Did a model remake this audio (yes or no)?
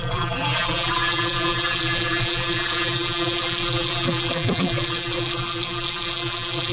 yes